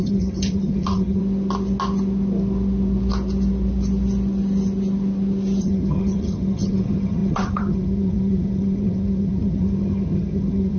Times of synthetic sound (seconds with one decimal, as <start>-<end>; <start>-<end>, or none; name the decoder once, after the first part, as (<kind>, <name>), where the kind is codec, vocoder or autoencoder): 0.0-1.2 (vocoder, HiFi-GAN); 5.6-10.8